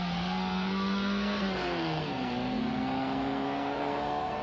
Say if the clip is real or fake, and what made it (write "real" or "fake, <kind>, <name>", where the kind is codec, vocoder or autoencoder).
fake, codec, SNAC